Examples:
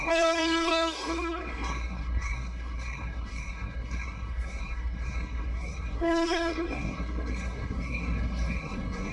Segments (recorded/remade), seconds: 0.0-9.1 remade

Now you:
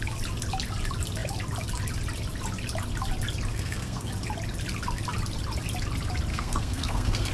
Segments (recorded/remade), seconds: 0.0-3.5 recorded; 3.5-4.1 remade; 4.1-6.3 recorded; 6.3-7.3 remade

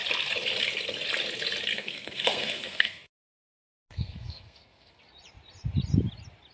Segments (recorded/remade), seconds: 0.0-1.7 recorded; 1.7-5.0 remade; 5.0-6.5 recorded

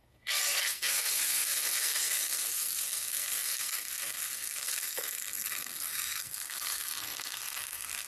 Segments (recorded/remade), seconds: 0.0-8.1 remade

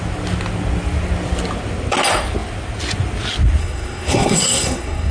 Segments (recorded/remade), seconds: 0.0-3.6 recorded; 3.6-5.1 remade

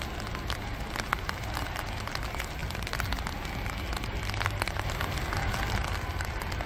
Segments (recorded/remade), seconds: 0.0-6.7 recorded